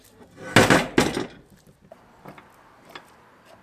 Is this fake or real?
real